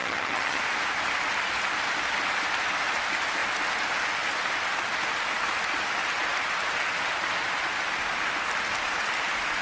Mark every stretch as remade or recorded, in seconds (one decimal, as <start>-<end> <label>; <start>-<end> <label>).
0.0-0.6 remade; 0.6-9.6 recorded